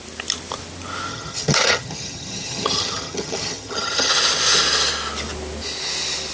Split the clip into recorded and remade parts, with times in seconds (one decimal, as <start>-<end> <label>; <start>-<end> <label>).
0.0-1.1 recorded; 1.1-4.1 remade; 4.1-6.3 recorded